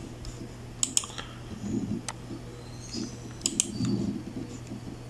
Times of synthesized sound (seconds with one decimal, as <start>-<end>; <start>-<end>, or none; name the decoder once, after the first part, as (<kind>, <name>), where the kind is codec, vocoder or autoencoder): none